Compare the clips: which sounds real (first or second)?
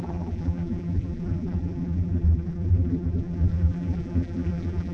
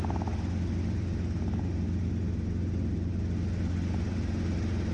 second